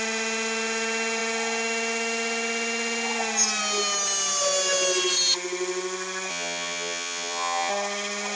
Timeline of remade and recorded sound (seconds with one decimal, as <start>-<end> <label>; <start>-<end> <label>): 0.0-6.3 recorded; 6.3-7.7 remade; 7.7-8.4 recorded